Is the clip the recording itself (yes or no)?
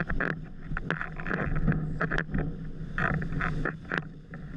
yes